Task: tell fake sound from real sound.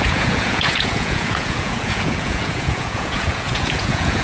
fake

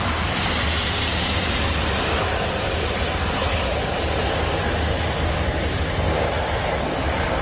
real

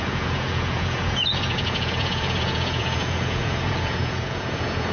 fake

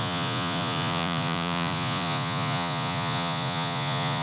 fake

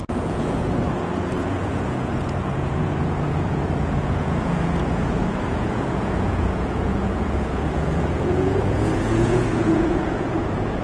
fake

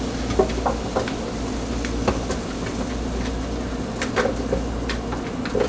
real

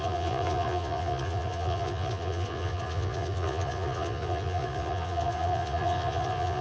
fake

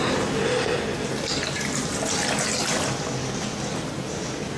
real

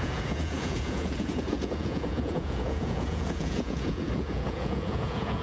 fake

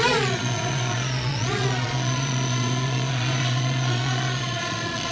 fake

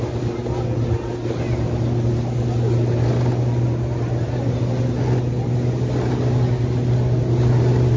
real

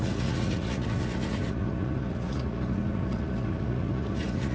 fake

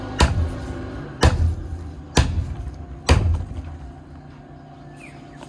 real